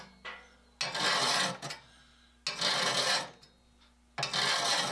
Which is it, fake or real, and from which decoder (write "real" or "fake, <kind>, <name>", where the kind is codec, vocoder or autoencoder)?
real